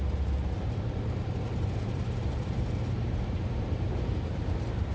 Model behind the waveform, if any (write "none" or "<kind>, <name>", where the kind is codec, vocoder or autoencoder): vocoder, BigVGAN v2